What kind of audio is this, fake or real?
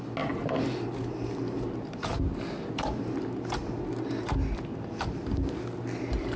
real